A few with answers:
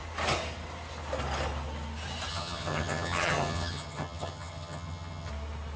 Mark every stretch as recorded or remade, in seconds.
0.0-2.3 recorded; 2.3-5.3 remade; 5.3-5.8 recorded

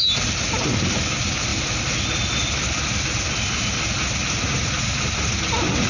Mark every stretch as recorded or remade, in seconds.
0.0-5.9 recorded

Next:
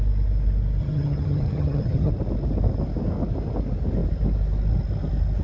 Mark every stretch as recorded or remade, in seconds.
0.0-0.8 recorded; 0.8-2.1 remade; 2.1-5.4 recorded